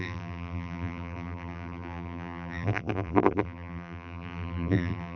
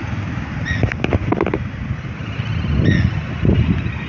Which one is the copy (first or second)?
first